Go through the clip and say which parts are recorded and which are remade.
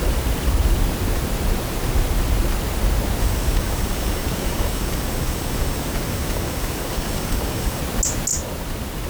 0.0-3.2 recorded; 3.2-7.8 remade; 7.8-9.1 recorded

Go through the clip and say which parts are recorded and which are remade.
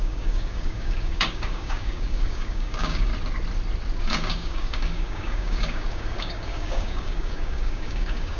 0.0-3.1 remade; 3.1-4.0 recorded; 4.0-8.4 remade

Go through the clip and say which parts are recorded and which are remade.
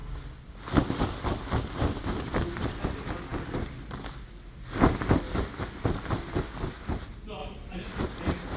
0.0-8.6 recorded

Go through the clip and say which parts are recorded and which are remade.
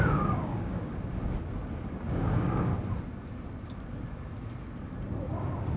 0.0-0.9 remade; 0.9-2.0 recorded; 2.0-2.7 remade; 2.7-5.8 recorded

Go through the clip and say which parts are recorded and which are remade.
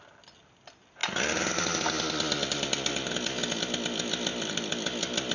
0.0-5.3 recorded